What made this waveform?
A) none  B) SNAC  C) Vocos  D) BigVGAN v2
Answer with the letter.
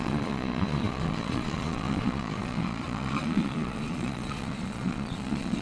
C